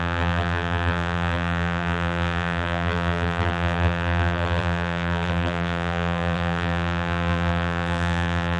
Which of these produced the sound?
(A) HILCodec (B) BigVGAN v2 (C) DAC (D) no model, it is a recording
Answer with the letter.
B